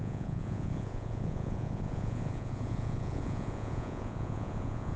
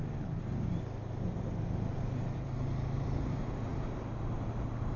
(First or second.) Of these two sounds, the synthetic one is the first